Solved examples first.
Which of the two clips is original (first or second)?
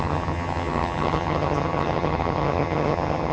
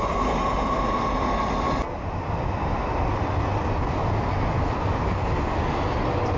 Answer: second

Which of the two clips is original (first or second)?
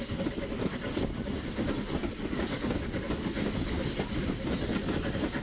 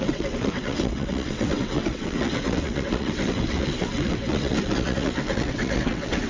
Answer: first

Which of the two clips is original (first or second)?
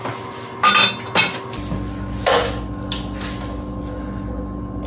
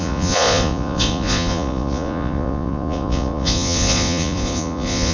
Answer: first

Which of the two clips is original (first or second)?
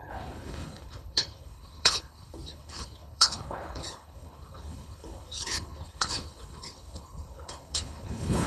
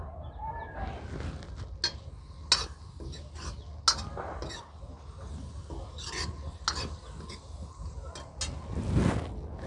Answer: second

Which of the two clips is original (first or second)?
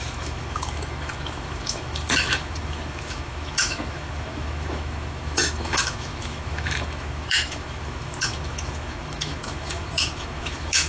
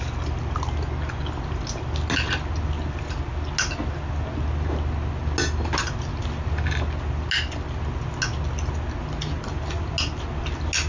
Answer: second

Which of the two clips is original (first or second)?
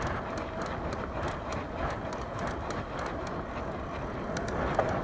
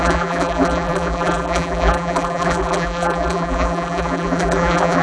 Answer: first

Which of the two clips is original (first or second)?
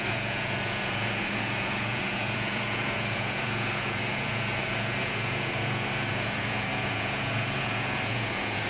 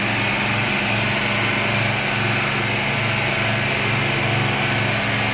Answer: second